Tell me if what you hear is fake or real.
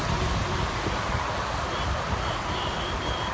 real